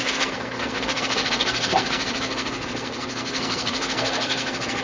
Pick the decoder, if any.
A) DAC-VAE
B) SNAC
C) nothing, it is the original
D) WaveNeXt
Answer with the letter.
B